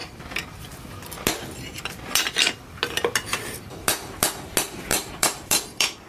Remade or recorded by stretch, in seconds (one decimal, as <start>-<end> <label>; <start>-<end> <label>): 0.0-4.9 recorded; 4.9-6.1 remade